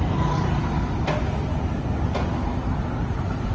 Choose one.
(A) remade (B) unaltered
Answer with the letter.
B